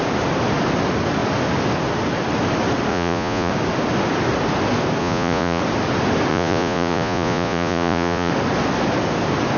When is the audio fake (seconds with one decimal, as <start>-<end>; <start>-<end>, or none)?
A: 2.9-3.5; 5.0-5.6; 6.3-8.3